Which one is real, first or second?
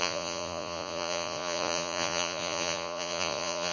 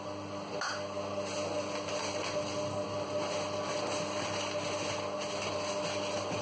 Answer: second